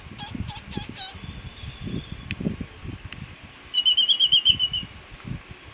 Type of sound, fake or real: real